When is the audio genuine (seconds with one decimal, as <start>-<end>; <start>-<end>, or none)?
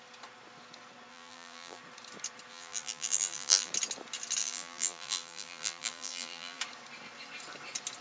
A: 0.0-1.1; 1.8-2.5; 3.7-4.4; 6.6-8.0